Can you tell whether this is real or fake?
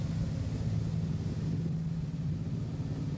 real